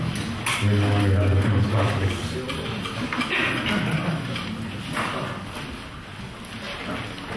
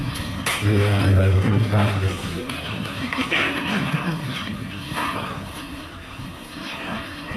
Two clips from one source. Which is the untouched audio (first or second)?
first